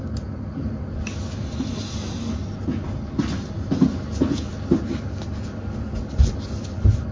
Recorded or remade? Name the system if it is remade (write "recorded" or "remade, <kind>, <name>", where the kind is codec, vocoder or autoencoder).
recorded